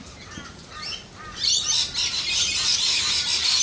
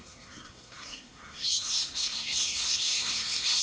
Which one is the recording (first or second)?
first